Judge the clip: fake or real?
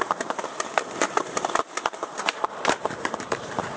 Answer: fake